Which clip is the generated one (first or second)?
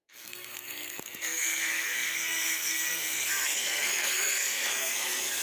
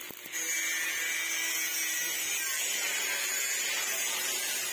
first